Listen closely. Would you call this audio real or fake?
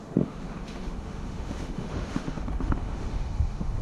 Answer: fake